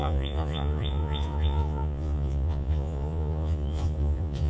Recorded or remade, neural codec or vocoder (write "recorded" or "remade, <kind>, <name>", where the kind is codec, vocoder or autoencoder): remade, vocoder, Vocos